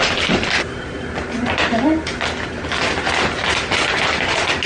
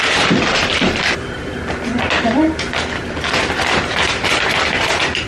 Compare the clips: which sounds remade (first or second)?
second